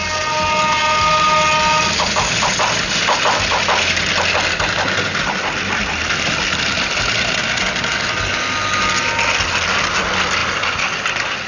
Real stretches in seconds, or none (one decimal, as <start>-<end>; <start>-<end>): 0.0-11.5